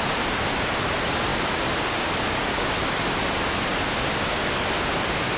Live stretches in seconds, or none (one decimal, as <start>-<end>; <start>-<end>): 0.0-5.4